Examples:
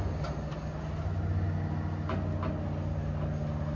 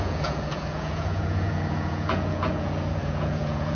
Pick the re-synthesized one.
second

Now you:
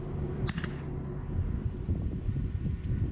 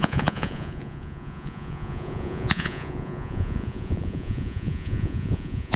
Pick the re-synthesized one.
second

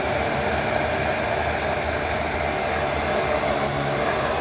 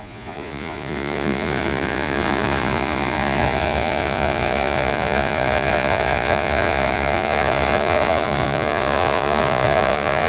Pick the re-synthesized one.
second